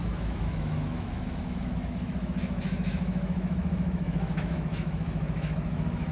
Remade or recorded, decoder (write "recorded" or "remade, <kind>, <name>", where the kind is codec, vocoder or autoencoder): remade, autoencoder, DAC-VAE